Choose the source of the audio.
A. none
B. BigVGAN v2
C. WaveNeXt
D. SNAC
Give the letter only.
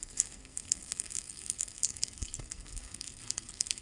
D